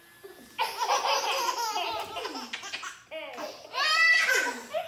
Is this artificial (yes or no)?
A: no